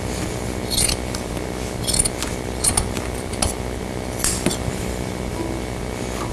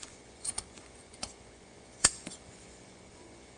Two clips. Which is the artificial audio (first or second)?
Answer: second